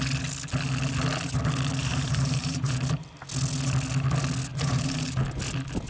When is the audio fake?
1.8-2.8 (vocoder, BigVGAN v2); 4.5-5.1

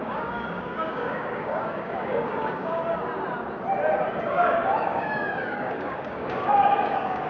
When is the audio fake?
0.0-2.8 (codec, DAC); 4.2-7.3

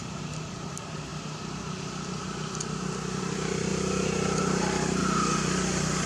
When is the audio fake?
0.0-1.1 (vocoder, BigVGAN v2); 3.2-3.7; 4.4-5.0